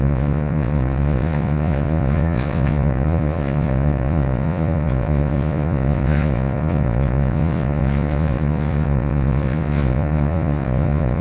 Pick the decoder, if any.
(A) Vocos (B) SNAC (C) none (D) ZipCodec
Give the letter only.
A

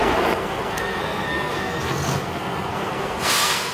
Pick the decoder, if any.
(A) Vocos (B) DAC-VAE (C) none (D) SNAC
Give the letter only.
D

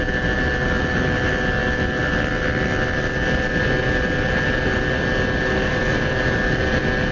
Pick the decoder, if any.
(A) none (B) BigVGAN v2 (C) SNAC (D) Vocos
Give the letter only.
A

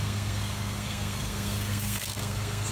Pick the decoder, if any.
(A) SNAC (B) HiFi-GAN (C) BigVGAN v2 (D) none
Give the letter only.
A